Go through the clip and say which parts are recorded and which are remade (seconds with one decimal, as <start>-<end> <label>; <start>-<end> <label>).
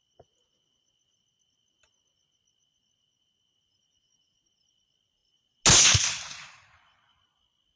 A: 0.0-7.8 recorded